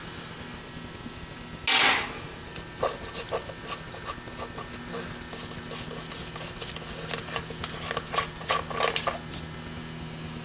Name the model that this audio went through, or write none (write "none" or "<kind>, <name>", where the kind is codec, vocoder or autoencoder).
none